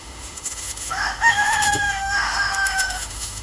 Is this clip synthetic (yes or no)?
yes